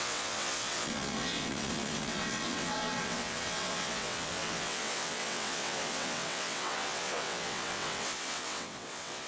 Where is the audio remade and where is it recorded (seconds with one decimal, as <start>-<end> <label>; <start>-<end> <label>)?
0.0-9.3 remade